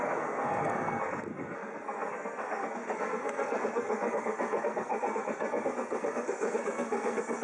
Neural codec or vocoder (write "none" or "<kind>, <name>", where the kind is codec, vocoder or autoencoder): codec, SNAC